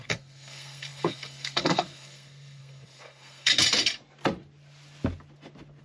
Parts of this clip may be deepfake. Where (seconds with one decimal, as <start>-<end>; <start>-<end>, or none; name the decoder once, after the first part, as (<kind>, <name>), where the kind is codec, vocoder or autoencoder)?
0.0-3.5 (codec, SNAC)